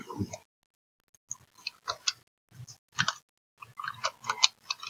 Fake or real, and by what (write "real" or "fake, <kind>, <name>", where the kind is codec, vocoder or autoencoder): real